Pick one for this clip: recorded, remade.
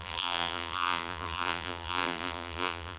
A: remade